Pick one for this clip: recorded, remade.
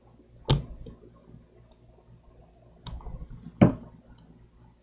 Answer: recorded